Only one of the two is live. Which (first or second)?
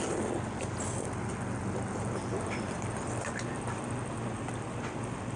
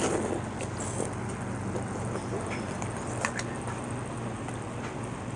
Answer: second